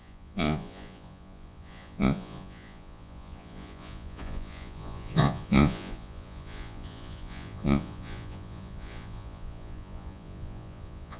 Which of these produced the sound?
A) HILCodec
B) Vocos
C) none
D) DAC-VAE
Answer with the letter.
B